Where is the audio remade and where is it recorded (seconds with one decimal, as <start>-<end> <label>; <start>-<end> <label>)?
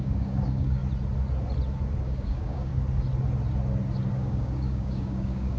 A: 0.0-0.8 remade; 0.8-2.0 recorded; 2.0-2.7 remade; 2.7-4.1 recorded; 4.1-5.6 remade